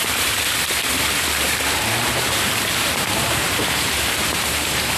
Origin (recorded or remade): remade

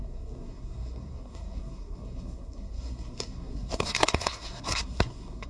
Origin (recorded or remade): remade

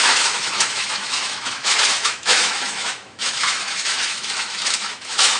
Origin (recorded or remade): remade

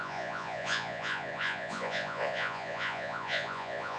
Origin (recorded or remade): remade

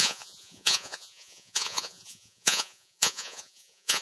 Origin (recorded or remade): remade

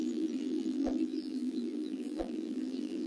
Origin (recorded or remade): remade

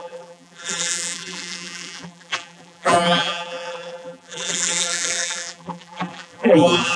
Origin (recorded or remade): remade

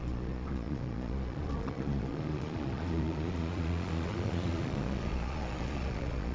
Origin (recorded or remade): remade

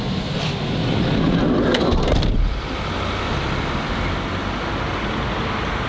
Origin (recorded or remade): recorded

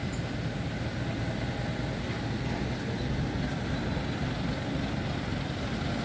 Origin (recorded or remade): recorded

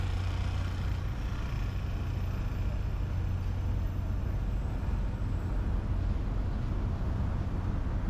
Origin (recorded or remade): recorded